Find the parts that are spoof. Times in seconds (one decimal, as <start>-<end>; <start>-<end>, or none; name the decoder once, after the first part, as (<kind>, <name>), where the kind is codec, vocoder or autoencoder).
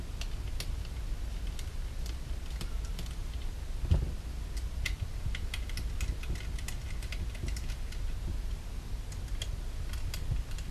none